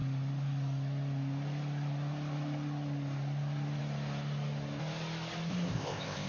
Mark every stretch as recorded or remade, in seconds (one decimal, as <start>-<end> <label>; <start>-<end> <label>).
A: 0.0-5.5 recorded; 5.5-6.3 remade